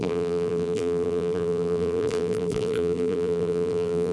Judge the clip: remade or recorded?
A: remade